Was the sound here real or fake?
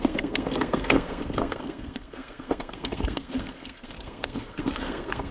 fake